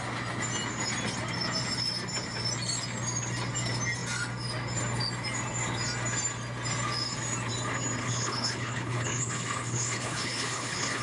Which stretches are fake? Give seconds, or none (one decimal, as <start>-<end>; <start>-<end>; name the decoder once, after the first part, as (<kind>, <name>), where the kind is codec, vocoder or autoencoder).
8.0-11.0 (codec, HILCodec)